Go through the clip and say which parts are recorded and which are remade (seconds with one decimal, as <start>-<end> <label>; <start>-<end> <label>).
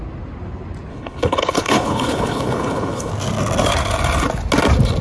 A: 0.0-0.9 recorded; 0.9-3.1 remade; 3.1-5.0 recorded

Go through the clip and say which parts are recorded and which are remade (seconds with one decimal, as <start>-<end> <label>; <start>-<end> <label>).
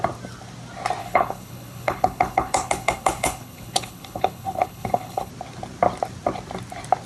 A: 0.0-1.0 recorded; 1.0-5.3 remade; 5.3-7.1 recorded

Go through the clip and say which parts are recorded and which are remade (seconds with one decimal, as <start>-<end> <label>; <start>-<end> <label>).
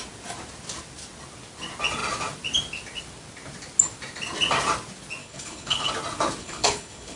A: 0.0-5.2 recorded; 5.2-5.9 remade; 5.9-6.4 recorded; 6.4-7.2 remade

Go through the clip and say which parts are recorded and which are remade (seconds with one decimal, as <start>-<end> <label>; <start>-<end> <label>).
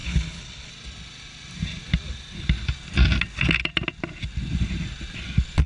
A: 0.0-0.7 remade; 0.7-5.7 recorded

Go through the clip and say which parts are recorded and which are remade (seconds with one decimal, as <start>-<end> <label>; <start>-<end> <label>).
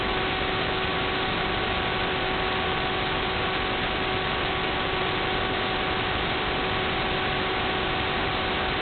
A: 0.0-8.8 recorded